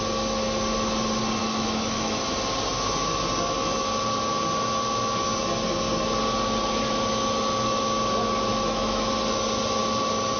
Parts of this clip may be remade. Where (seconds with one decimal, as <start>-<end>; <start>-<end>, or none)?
1.4-2.2; 8.5-9.1